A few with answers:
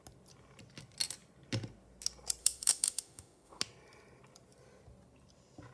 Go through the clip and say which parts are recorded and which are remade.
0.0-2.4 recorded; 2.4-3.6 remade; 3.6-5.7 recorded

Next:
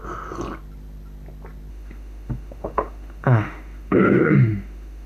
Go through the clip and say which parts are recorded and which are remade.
0.0-1.7 recorded; 1.7-5.1 remade

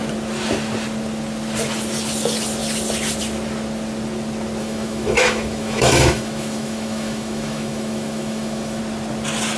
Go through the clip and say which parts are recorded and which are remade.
0.0-4.6 recorded; 4.6-8.8 remade; 8.8-9.6 recorded